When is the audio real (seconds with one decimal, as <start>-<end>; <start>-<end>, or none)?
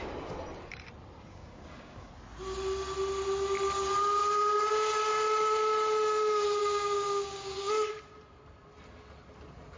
0.0-1.3; 2.1-6.6; 7.6-9.8